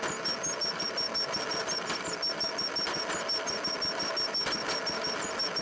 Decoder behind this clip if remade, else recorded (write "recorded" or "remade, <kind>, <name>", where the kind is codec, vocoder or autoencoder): recorded